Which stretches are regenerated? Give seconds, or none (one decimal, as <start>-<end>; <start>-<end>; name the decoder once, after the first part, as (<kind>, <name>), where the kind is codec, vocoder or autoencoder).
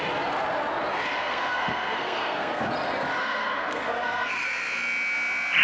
1.2-2.6 (codec, SNAC); 3.2-4.3